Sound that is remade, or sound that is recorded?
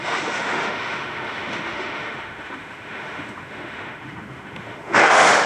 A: remade